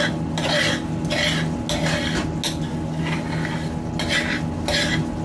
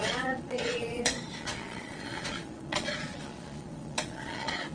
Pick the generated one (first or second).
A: second